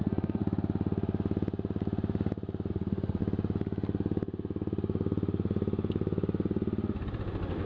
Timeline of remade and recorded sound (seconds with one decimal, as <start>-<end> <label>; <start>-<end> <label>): 0.0-0.4 remade; 0.4-2.7 recorded; 2.7-3.2 remade; 3.2-7.7 recorded

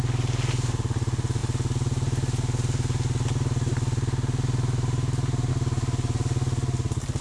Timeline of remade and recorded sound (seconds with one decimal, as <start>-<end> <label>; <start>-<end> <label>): 0.0-7.2 recorded